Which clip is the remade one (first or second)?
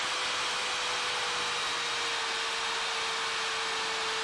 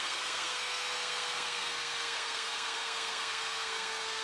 second